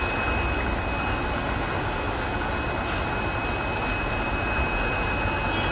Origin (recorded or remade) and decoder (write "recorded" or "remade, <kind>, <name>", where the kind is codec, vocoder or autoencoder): recorded